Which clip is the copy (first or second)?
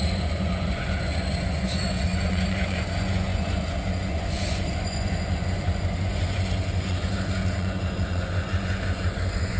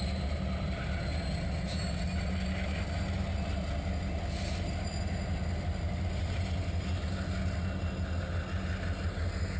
first